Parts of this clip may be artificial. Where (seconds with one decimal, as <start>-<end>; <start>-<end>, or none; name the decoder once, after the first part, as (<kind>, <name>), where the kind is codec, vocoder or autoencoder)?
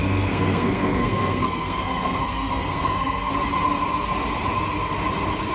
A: 0.0-3.3 (codec, SNAC)